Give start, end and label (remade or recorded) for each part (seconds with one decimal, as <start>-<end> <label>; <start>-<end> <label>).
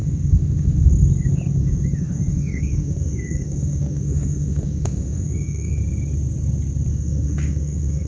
0.0-0.9 remade; 0.9-1.6 recorded; 1.6-5.8 remade; 5.8-6.9 recorded; 6.9-8.1 remade